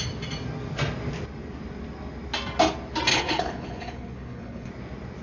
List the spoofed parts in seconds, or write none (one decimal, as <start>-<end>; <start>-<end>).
3.1-4.7